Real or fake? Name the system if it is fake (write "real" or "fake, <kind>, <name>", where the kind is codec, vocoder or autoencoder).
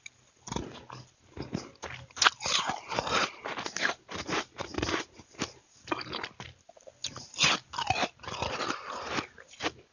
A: real